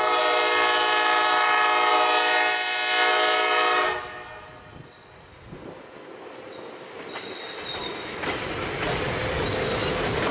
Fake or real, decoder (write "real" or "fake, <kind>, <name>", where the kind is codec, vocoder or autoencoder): real